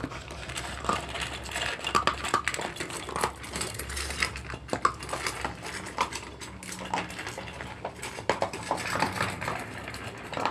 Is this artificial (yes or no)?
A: no